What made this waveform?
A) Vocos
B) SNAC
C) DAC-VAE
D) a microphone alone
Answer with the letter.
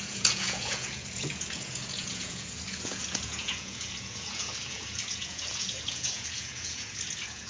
A